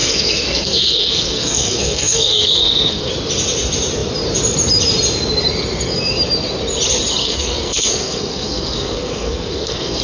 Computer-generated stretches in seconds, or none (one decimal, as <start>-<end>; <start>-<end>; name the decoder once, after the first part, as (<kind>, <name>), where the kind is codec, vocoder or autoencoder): 0.0-3.1 (codec, SNAC); 7.2-10.0